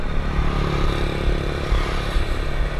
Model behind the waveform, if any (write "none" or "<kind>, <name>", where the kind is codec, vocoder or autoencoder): none